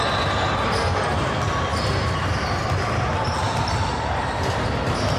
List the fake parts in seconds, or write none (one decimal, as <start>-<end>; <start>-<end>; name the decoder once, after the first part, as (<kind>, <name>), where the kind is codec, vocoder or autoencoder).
none